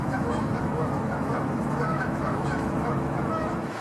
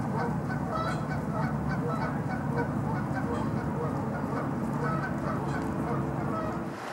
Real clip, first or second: second